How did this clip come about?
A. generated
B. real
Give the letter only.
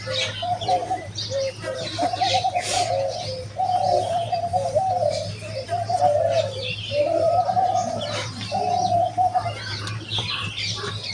A